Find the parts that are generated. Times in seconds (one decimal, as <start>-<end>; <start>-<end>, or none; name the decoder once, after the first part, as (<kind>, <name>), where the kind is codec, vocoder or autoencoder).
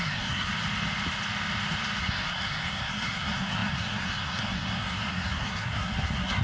0.0-0.5 (codec, SNAC); 2.0-6.4